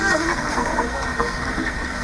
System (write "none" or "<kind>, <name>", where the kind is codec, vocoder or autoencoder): codec, SNAC